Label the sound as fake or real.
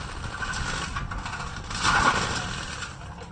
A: real